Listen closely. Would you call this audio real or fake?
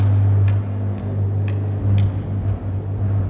real